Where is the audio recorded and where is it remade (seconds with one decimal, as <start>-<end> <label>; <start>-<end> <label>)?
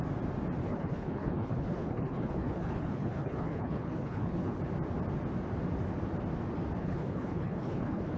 0.0-0.6 recorded; 0.6-4.6 remade; 4.6-6.8 recorded; 6.8-8.2 remade